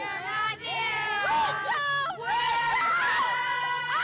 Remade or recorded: recorded